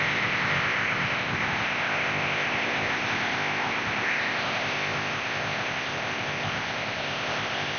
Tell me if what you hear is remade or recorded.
remade